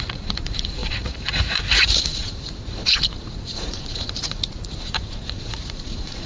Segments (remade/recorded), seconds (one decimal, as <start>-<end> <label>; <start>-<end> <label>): 0.0-6.3 remade